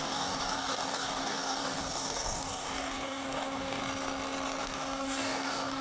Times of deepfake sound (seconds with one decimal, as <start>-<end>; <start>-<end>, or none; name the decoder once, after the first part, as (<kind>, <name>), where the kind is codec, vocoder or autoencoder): 0.0-3.8 (codec, DAC); 4.6-5.8

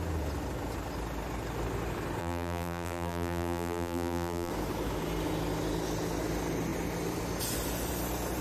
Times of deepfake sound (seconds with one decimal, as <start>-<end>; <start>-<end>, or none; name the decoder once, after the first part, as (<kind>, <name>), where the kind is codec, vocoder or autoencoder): 2.2-4.5 (vocoder, BigVGAN v2)

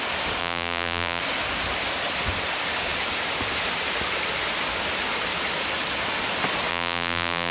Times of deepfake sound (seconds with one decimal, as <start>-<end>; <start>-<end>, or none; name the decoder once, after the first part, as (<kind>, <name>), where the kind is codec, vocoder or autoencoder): 0.4-1.2 (vocoder, BigVGAN v2); 6.7-7.5

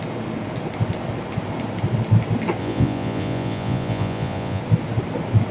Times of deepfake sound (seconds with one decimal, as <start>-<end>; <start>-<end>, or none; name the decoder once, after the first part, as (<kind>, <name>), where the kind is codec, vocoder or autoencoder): 2.6-4.6 (vocoder, Vocos)

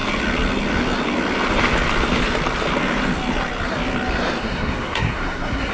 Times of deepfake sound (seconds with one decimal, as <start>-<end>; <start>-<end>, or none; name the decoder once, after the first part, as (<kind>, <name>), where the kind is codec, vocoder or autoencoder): 4.4-5.7 (codec, SNAC)

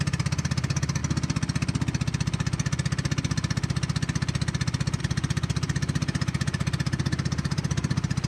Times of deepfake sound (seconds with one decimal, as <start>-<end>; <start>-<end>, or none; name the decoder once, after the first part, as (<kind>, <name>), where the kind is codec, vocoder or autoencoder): 0.0-1.0 (vocoder, BigVGAN v2); 5.0-8.3